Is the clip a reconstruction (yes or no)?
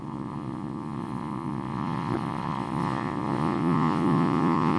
yes